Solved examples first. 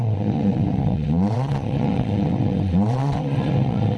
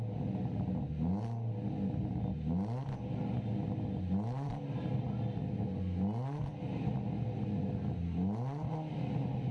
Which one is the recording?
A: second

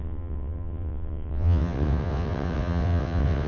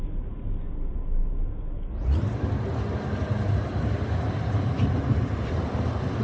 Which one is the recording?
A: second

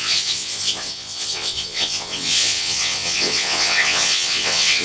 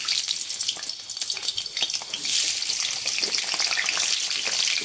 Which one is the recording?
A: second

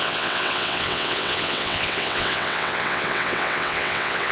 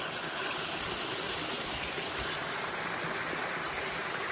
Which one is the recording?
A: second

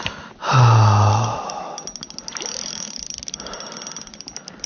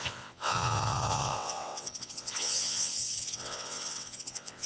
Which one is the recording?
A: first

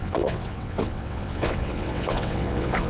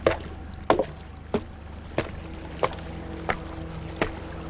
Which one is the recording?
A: second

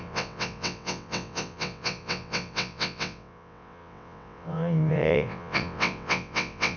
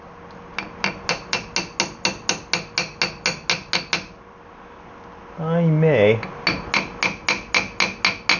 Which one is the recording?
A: second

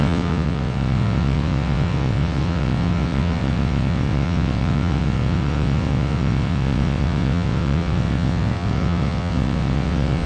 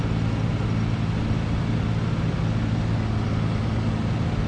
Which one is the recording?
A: second